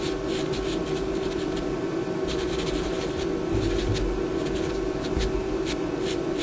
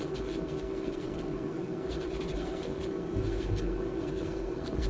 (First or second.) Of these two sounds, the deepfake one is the second